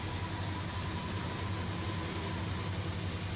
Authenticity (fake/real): real